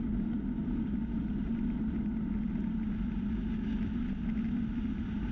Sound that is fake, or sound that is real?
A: real